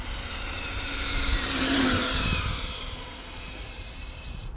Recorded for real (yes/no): no